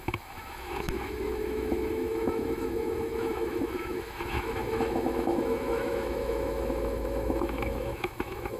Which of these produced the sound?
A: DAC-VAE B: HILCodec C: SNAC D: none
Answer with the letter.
A